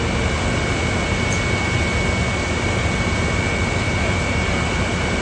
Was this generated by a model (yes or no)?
no